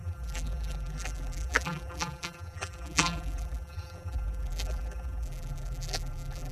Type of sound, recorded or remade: remade